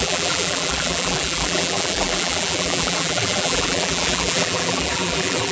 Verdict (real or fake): fake